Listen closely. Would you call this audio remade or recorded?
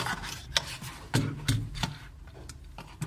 recorded